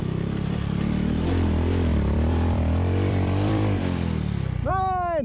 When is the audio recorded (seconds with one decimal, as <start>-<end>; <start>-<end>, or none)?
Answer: 0.0-1.9; 4.7-5.2